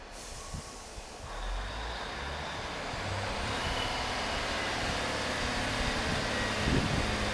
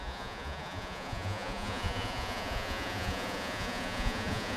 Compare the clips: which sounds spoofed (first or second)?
second